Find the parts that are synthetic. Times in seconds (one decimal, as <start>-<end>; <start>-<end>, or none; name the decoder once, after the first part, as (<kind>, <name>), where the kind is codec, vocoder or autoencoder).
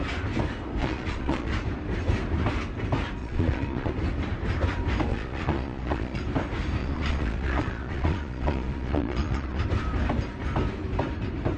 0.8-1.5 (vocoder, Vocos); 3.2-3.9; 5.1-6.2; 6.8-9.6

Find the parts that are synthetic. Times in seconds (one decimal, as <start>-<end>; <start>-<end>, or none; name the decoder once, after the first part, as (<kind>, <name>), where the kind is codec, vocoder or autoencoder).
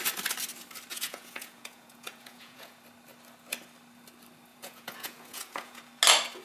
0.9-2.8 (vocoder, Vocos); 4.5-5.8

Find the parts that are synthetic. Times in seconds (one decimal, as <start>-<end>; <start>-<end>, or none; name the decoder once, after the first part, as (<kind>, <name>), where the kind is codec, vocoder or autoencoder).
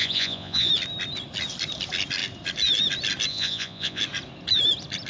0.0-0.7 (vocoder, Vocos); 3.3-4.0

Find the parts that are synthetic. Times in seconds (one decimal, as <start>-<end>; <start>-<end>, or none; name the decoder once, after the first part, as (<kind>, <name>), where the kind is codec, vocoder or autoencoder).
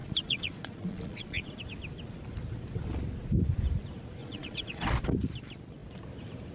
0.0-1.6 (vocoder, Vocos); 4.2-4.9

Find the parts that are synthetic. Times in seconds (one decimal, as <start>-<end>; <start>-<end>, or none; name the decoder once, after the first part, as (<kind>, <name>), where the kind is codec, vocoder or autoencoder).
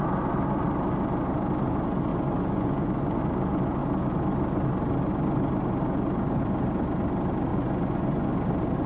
2.1-3.2 (vocoder, Vocos); 7.5-8.3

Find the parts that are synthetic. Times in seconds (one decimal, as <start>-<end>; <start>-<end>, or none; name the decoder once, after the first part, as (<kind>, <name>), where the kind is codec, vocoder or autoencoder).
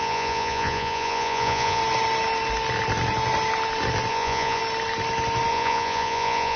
0.0-1.8 (vocoder, Vocos); 4.1-4.6; 5.5-6.6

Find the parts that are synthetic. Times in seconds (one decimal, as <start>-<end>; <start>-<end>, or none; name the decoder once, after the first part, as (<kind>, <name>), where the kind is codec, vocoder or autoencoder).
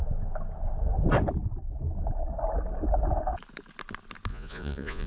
4.3-5.1 (vocoder, Vocos)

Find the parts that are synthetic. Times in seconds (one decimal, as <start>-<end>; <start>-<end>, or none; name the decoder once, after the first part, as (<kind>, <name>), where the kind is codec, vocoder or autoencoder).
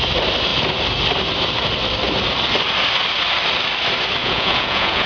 4.2-5.1 (vocoder, Vocos)